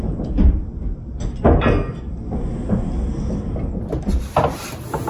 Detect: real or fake real